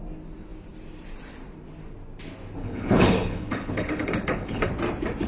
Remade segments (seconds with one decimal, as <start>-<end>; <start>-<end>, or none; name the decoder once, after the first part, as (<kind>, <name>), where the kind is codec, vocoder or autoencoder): 2.6-4.7 (codec, HILCodec)